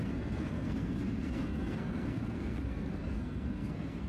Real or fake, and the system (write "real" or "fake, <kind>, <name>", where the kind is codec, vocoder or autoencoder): fake, codec, SNAC